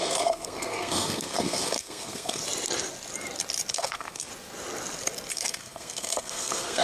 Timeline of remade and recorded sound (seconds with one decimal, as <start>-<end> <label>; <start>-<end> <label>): 0.0-2.4 remade; 2.4-3.7 recorded; 3.7-4.3 remade; 4.3-5.3 recorded; 5.3-6.8 remade